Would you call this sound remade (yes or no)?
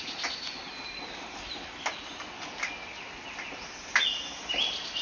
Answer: no